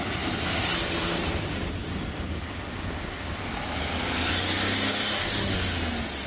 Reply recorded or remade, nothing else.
recorded